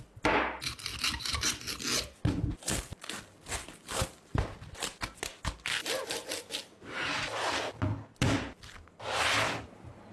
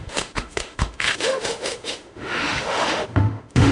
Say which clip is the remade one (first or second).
second